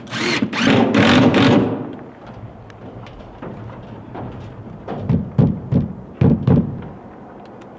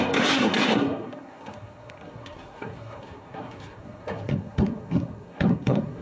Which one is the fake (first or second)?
second